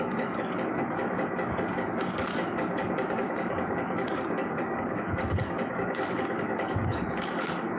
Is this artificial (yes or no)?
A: yes